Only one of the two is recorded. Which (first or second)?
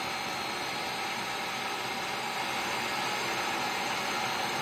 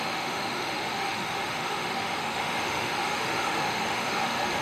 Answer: first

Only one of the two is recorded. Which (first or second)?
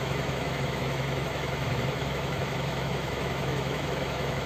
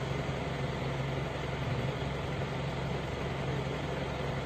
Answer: second